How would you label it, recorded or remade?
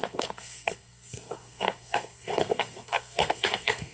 remade